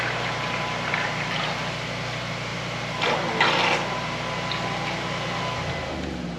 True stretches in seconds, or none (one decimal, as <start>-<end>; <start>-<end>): 0.0-6.4